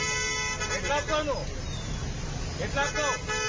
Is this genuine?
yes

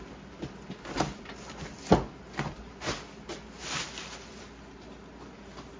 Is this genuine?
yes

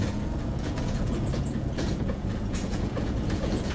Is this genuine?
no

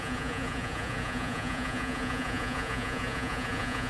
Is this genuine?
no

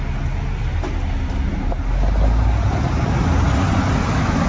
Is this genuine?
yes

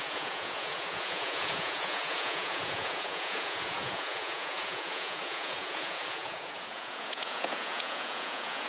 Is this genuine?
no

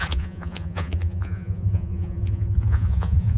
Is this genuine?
no